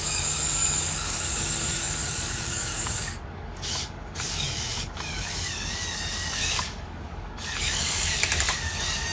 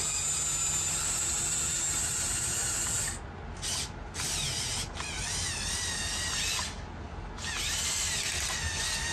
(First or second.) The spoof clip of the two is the first